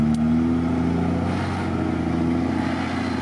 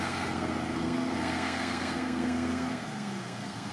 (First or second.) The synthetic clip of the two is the second